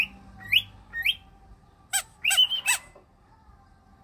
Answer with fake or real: real